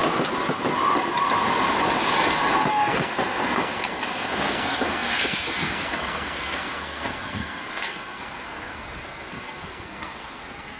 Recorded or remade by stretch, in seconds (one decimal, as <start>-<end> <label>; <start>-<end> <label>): 0.0-2.7 recorded; 2.7-10.8 remade